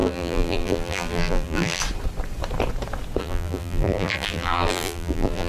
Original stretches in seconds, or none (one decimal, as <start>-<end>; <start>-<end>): 1.8-3.2